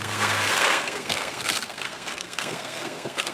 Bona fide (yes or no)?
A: no